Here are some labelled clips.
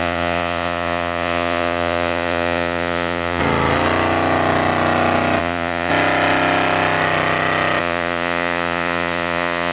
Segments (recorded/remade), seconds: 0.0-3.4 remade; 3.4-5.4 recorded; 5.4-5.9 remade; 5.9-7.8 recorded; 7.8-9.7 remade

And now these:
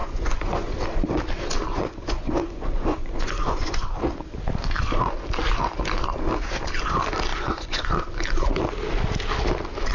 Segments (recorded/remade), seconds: 0.0-0.7 remade; 0.7-1.7 recorded; 1.7-3.8 remade; 3.8-7.3 recorded; 7.3-7.8 remade; 7.8-9.9 recorded

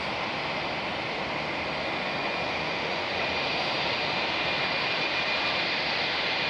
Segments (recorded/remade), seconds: 0.0-2.2 recorded; 2.2-3.5 remade; 3.5-6.5 recorded